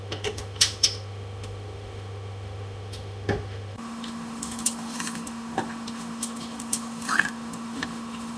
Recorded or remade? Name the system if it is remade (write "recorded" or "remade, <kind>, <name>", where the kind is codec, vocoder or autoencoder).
remade, autoencoder, DAC-VAE